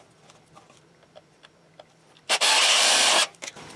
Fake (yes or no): yes